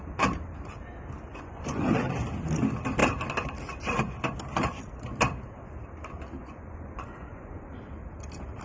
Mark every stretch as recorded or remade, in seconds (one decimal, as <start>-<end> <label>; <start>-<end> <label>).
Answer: 0.0-1.3 recorded; 1.3-1.9 remade; 1.9-6.4 recorded; 6.4-7.8 remade; 7.8-8.6 recorded